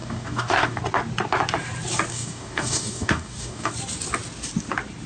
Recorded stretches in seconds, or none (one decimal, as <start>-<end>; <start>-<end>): 0.8-2.1; 3.7-5.1